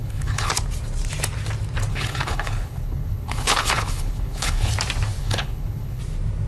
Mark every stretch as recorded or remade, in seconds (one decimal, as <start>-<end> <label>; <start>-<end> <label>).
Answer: 0.0-0.5 remade; 0.5-1.9 recorded; 1.9-4.7 remade; 4.7-5.2 recorded; 5.2-6.0 remade; 6.0-6.5 recorded